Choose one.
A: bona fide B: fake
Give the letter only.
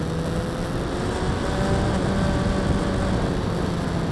A